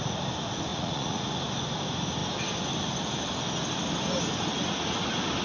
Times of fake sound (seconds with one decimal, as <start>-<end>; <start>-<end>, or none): 0.7-1.3

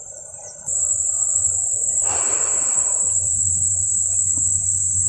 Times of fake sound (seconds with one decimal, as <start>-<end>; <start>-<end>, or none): 0.8-3.9

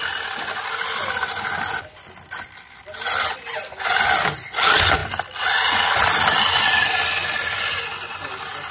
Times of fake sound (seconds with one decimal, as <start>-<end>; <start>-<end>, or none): none

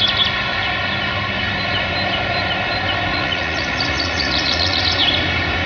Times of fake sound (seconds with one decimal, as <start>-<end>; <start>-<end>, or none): 3.1-4.8

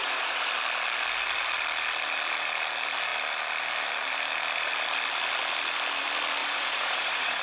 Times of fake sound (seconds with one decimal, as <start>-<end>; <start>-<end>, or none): 0.0-0.5; 6.4-7.4

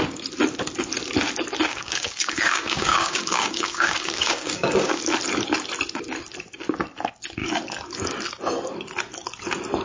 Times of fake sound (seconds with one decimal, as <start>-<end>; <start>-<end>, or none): 1.7-5.0

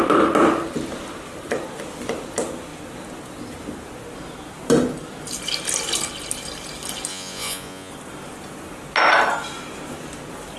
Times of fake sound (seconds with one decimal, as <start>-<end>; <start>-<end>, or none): 7.1-7.9

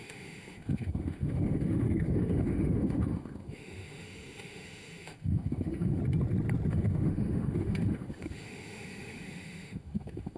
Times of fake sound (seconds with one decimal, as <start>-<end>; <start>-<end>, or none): 0.0-6.0; 6.7-10.4